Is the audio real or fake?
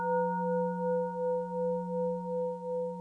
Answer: real